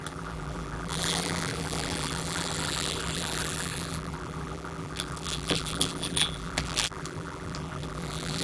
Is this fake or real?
fake